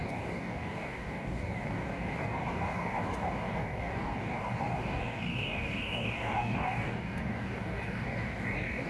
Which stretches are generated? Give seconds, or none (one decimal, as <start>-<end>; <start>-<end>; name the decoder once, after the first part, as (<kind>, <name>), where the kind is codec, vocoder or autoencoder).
0.0-8.9 (codec, DAC)